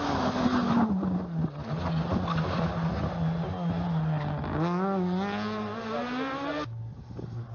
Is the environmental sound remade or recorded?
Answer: recorded